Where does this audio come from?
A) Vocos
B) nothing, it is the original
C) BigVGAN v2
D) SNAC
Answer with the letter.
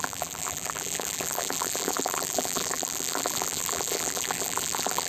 C